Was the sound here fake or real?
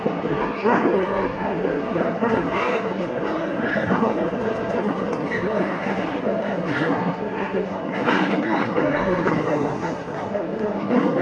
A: fake